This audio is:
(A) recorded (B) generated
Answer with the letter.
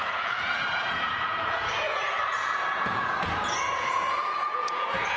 B